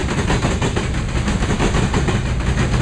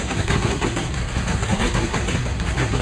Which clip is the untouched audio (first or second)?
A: first